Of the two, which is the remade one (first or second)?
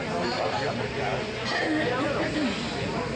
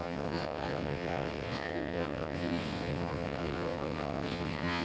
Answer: second